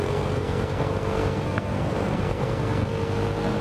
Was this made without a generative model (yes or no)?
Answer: no